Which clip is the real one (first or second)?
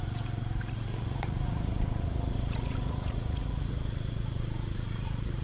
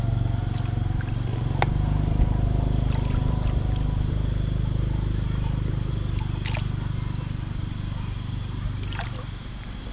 second